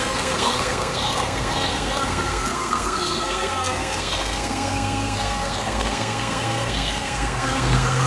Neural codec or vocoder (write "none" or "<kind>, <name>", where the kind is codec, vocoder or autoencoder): codec, SNAC